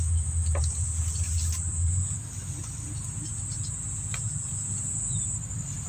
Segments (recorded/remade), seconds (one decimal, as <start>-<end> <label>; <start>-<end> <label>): 0.0-5.9 recorded